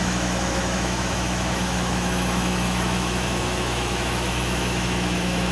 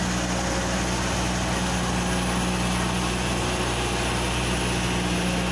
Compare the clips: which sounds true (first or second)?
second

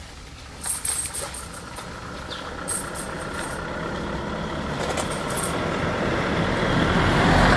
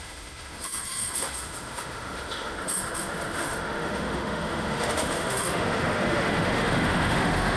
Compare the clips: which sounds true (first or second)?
first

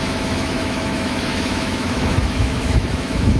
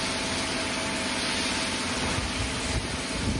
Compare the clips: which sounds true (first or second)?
second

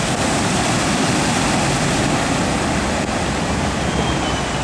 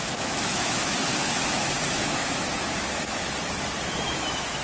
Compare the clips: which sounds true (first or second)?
first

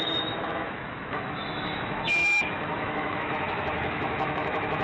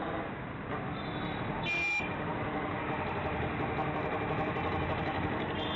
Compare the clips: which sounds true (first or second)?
second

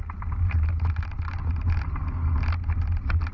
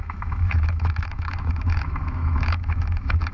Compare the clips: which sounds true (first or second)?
first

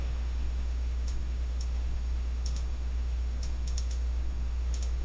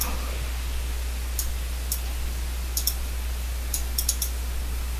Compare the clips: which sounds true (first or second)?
second